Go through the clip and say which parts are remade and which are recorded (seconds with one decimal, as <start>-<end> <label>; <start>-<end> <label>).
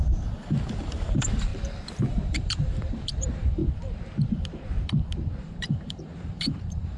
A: 0.0-1.5 remade; 1.5-2.1 recorded; 2.1-3.6 remade; 3.6-5.4 recorded; 5.4-7.0 remade